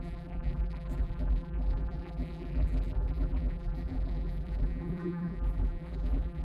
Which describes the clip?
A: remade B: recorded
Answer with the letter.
A